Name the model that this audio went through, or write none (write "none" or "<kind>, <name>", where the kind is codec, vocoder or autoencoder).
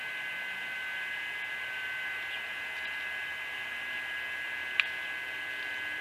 none